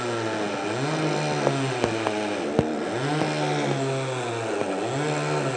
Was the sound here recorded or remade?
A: recorded